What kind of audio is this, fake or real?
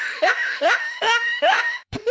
fake